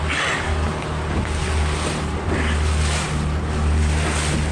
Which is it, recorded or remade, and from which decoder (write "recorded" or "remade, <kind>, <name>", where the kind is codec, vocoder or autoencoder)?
recorded